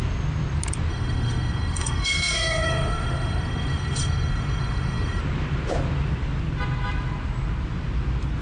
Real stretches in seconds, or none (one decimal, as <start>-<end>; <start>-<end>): 0.0-0.9; 5.2-8.4